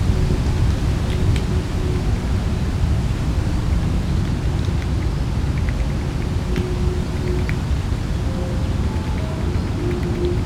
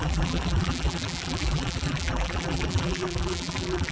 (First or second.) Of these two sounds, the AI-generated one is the second